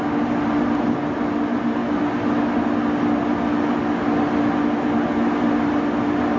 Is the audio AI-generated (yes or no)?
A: no